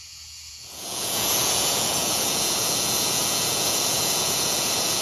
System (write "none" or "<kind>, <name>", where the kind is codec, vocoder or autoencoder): vocoder, Vocos